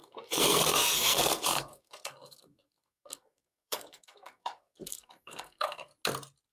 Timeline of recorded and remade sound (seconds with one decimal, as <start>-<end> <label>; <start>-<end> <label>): 0.0-5.9 remade; 5.9-6.5 recorded